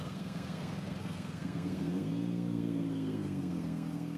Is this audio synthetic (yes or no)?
yes